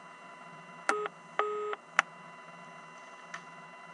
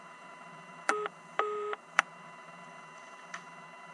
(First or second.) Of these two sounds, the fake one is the second